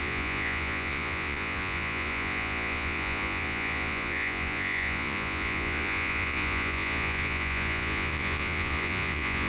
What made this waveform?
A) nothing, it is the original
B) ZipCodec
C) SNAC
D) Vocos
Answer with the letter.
D